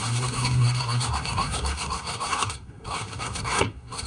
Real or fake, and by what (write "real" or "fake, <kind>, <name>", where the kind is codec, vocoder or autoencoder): fake, codec, SNAC